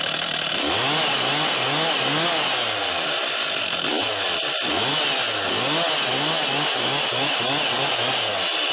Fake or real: real